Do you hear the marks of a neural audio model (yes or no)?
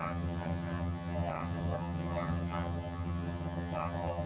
yes